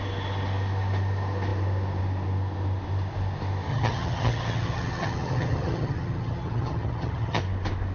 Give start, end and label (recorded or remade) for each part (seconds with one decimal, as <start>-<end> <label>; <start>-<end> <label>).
0.0-3.7 recorded; 3.7-7.4 remade; 7.4-7.9 recorded